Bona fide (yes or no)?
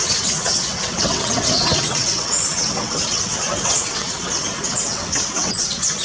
no